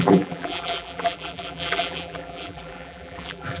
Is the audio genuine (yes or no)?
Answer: no